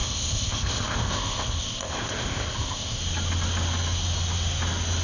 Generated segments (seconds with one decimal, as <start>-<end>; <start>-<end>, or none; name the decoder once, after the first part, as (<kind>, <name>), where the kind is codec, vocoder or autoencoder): 0.0-3.0 (codec, ZipCodec)